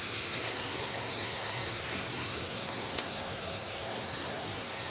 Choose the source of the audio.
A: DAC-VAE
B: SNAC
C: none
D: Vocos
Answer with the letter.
B